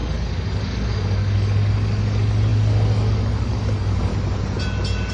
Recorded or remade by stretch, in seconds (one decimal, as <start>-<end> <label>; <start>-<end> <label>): 0.0-4.1 remade; 4.1-5.1 recorded